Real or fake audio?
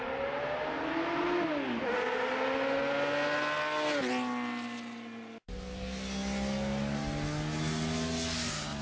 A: real